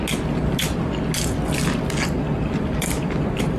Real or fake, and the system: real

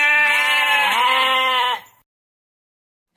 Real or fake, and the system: real